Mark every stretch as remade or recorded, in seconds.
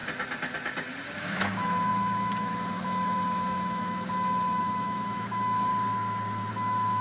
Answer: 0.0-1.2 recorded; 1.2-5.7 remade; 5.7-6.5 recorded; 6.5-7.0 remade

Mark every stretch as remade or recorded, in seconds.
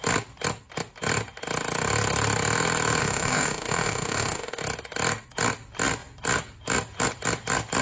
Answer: 0.0-3.0 recorded; 3.0-4.6 remade; 4.6-7.8 recorded